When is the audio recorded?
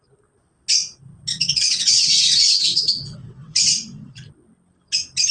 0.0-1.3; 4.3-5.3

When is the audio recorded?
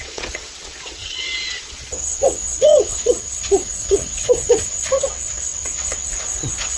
none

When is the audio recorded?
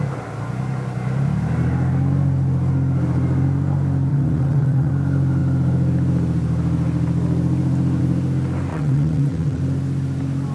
0.0-4.1; 4.9-8.7; 9.6-10.5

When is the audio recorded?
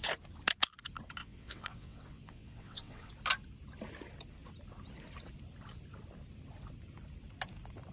0.0-1.2; 3.1-7.9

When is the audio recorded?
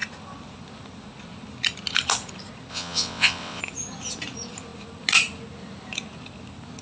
0.0-2.7; 3.6-6.8